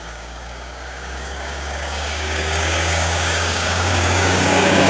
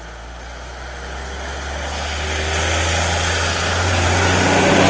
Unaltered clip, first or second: second